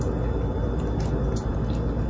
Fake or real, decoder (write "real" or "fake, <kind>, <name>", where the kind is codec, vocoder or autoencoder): real